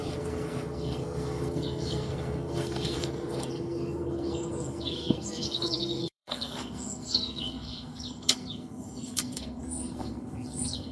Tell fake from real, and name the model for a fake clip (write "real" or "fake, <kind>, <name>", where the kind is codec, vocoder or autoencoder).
fake, codec, SNAC